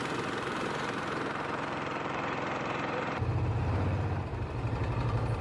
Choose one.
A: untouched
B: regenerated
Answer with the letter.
B